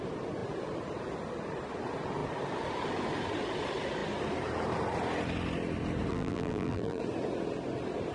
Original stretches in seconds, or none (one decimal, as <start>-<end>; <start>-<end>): 0.0-6.1; 7.0-8.1